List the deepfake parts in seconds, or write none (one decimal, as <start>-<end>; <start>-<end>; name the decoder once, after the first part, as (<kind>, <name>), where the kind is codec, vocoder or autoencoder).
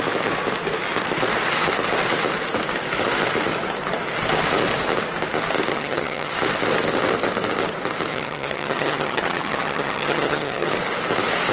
5.7-6.3 (vocoder, HiFi-GAN); 8.1-10.7